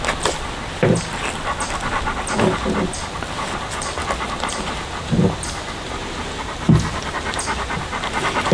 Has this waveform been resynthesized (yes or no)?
no